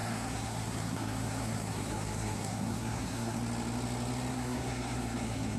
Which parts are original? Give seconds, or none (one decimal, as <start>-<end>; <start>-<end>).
3.4-4.3